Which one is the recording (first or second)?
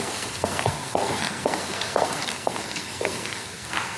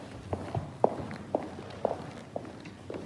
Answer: second